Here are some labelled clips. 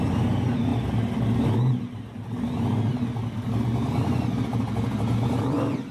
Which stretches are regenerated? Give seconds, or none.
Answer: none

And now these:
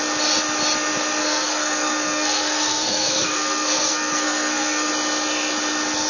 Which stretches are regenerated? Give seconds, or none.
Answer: 1.2-4.9 (codec, SNAC)